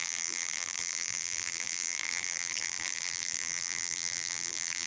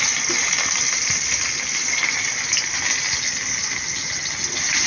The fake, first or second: first